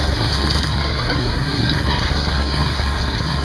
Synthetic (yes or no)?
yes